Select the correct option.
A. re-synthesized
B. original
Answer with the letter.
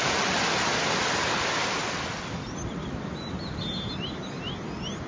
B